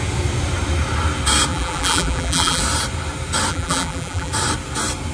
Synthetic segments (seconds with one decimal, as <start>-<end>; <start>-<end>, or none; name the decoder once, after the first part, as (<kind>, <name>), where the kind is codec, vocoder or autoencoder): 1.5-2.6 (vocoder, BigVGAN v2); 3.5-4.3